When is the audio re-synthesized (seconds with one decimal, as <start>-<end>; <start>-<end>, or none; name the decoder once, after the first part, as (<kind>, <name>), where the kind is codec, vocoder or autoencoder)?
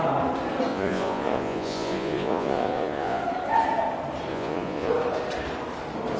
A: 0.7-3.2 (vocoder, Vocos); 4.3-4.9